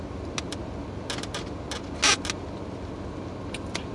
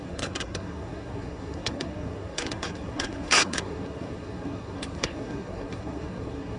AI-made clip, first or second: second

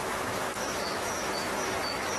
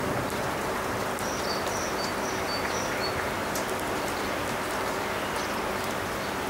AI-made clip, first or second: first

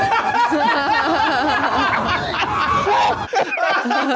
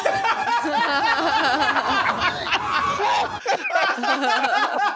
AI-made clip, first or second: first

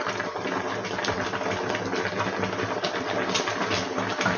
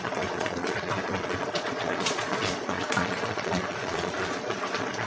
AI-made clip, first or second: second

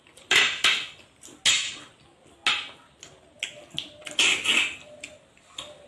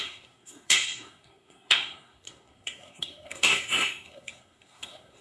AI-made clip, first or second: second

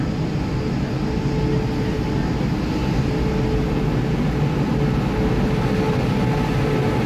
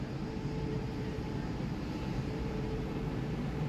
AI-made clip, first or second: second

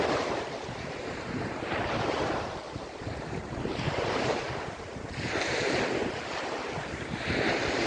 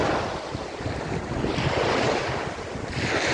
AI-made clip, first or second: first